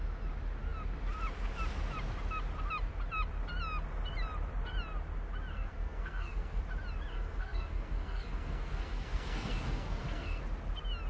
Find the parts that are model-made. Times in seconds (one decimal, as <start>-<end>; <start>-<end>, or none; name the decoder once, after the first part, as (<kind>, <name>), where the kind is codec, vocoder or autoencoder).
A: 5.5-6.6 (codec, SNAC); 7.1-10.4